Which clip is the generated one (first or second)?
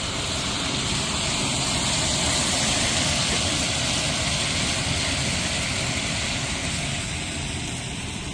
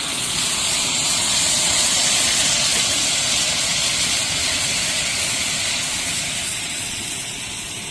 second